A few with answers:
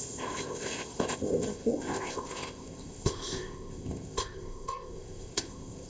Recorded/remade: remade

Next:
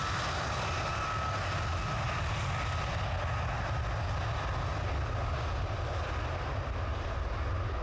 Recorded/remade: recorded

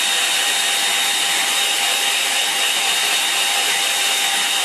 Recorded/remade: remade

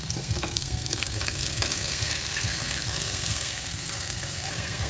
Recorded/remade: remade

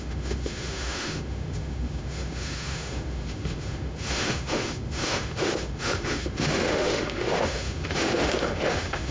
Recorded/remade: remade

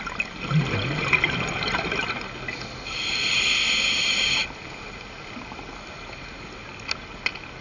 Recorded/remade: recorded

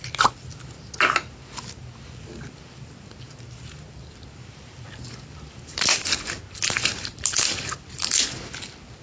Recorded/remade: recorded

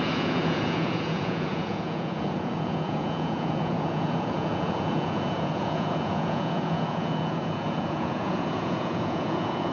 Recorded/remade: remade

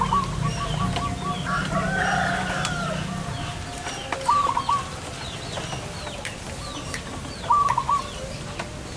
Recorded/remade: recorded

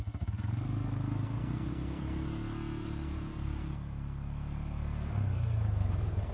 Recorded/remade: remade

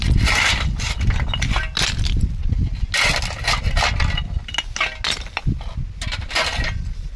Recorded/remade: recorded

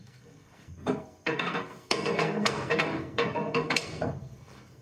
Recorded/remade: remade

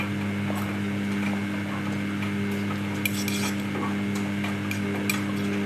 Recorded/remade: recorded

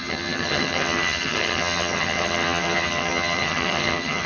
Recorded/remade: remade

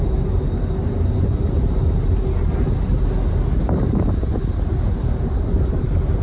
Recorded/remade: recorded